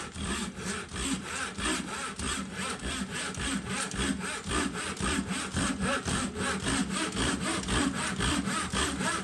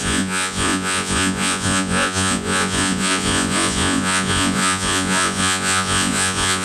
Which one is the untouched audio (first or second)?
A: first